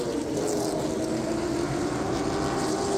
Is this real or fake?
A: real